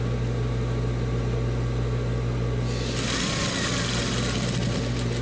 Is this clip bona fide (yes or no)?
yes